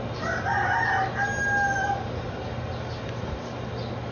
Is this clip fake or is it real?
real